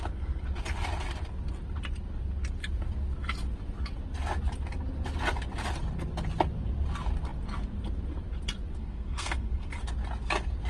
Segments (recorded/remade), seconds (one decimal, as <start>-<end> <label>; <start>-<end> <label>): 0.0-8.7 recorded; 8.7-9.7 remade; 9.7-10.7 recorded